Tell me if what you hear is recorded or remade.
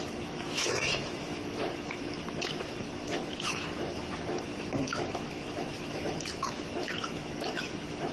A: remade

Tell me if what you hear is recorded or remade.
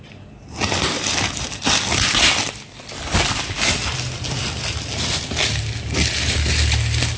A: recorded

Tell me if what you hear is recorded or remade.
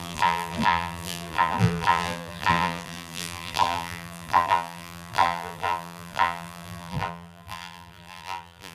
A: remade